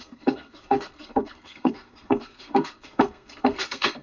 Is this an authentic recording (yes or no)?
no